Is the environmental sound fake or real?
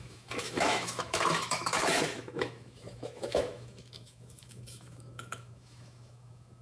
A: fake